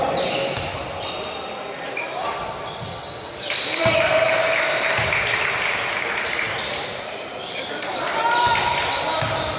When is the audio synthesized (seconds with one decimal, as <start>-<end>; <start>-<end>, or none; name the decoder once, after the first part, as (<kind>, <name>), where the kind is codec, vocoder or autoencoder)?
7.4-7.9 (codec, DAC)